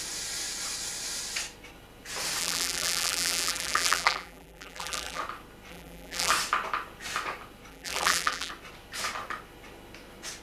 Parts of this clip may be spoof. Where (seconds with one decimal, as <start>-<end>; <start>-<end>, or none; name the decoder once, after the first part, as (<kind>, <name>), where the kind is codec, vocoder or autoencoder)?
2.4-5.2 (vocoder, BigVGAN v2); 5.7-6.3; 7.7-8.5